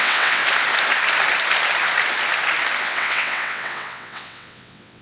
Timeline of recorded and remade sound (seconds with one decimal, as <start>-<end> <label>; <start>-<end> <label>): 0.0-0.4 remade; 0.4-2.8 recorded; 2.8-5.0 remade